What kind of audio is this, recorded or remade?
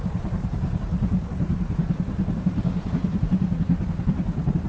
remade